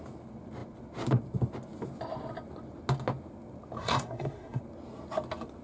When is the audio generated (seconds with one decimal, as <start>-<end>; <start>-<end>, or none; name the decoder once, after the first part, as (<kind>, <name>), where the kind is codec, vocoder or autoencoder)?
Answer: 3.8-4.6 (codec, SNAC)

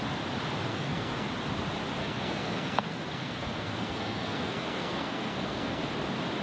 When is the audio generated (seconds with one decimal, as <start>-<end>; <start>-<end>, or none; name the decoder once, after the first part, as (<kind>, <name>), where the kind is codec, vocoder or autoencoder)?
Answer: 0.7-1.3 (codec, SNAC); 2.0-5.8

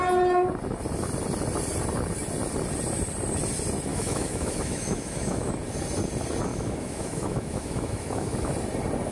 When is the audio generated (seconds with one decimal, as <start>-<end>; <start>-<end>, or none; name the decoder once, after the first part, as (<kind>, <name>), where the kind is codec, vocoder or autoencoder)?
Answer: 3.9-5.5 (autoencoder, DAC-VAE); 6.5-8.5

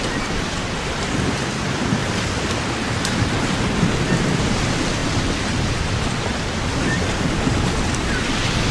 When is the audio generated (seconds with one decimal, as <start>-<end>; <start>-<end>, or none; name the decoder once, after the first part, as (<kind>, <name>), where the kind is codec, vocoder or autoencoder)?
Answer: none

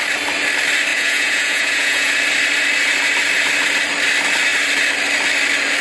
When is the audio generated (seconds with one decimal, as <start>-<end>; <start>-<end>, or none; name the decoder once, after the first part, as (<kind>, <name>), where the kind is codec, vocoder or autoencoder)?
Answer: 0.9-2.1 (vocoder, Vocos)

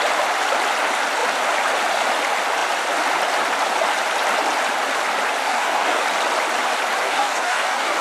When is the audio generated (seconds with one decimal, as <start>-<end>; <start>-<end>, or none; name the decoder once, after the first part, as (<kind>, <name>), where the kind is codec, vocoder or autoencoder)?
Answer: 5.4-6.0 (codec, DAC); 7.0-8.0

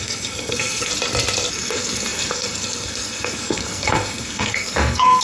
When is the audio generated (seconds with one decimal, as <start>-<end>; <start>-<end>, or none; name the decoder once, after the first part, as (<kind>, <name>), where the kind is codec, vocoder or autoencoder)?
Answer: 0.0-0.9 (codec, SNAC); 1.5-5.2